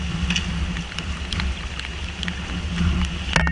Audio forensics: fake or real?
real